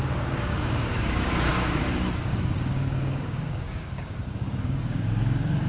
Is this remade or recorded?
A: remade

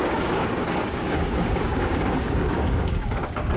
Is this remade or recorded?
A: remade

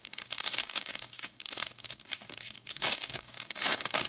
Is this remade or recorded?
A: remade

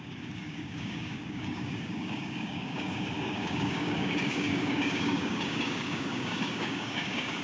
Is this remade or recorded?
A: remade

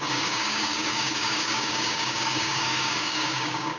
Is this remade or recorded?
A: remade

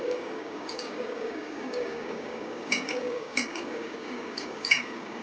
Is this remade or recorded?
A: remade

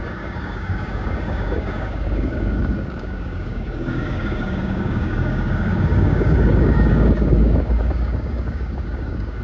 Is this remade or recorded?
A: remade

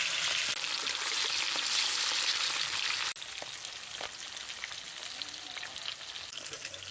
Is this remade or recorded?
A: recorded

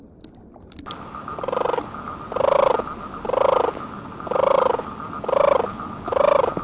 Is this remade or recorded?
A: recorded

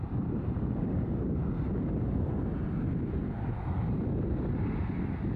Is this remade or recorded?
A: recorded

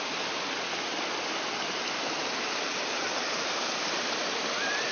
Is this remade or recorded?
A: recorded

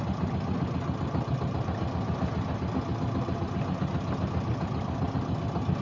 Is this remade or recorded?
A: recorded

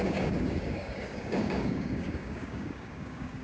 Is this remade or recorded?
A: remade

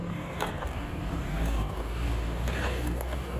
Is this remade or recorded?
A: remade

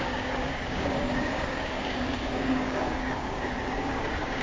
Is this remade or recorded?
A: remade